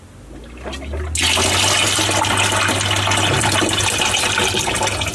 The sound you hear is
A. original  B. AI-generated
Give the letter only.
A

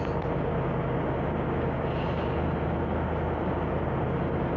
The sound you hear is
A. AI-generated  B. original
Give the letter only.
B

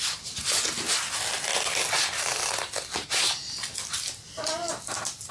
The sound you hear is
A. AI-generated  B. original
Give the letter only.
B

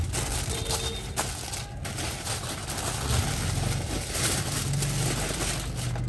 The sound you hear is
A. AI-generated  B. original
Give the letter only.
B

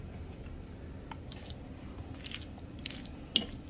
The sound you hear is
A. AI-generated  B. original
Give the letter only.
B